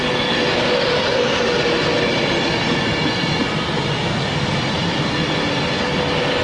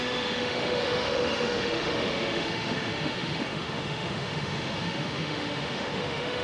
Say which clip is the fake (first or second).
second